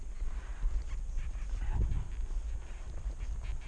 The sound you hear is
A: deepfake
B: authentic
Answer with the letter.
B